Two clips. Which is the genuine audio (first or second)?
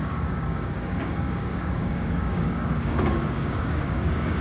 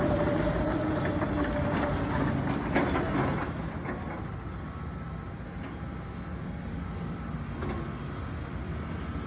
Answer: second